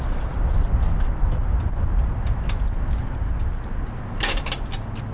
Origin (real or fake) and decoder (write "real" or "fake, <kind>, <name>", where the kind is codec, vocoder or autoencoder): real